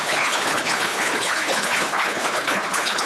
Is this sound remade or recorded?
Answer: remade